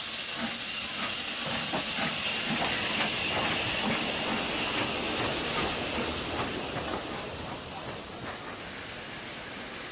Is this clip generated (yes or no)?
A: no